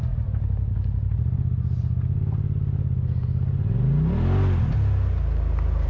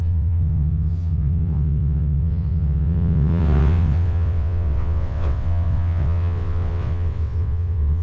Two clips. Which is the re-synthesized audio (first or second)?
second